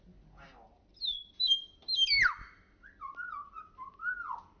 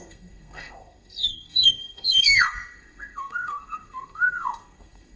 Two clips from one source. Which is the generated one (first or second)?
second